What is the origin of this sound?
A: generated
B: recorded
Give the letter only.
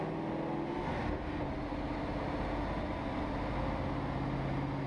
B